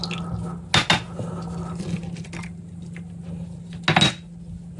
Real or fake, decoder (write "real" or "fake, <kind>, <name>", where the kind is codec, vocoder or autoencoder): real